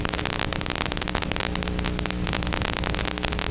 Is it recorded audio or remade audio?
recorded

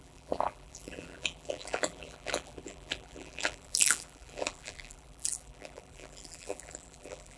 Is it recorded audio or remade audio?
remade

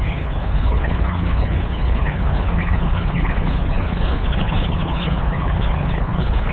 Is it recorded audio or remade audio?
remade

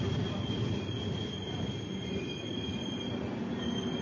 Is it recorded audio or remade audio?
recorded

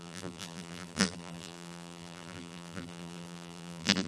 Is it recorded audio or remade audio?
remade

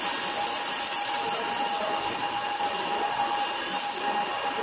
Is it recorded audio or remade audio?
recorded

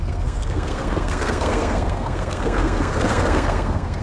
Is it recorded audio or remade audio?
remade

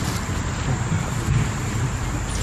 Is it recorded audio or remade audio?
recorded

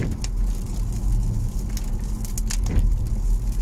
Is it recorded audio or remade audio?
recorded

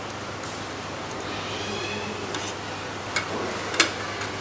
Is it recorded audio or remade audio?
recorded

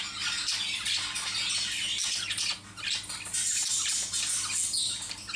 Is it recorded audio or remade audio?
recorded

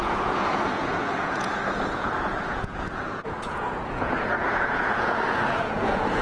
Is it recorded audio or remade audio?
remade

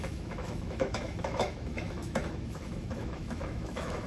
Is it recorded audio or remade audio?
remade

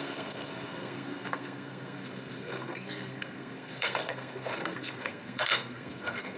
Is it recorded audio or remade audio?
remade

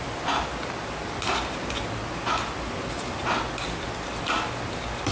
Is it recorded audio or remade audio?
recorded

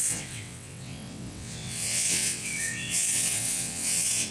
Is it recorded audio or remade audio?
remade